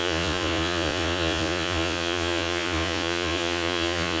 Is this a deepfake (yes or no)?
yes